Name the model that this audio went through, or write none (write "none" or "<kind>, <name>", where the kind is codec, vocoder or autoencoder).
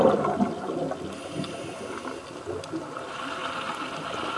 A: none